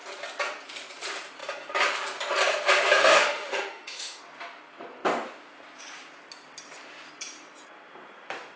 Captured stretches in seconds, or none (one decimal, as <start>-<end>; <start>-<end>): 0.0-3.0; 4.2-8.6